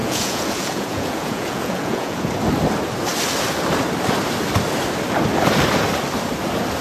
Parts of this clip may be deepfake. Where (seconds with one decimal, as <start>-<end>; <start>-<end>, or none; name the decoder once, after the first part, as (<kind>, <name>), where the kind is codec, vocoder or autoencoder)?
0.0-2.3 (vocoder, Vocos)